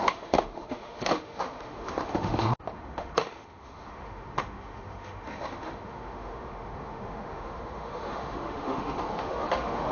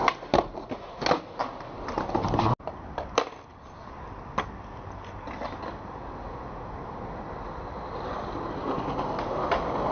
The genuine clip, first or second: second